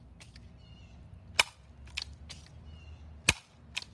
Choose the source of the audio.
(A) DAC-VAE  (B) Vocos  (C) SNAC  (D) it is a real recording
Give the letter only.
D